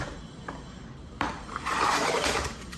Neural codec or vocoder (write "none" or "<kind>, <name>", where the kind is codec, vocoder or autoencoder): vocoder, BigVGAN v2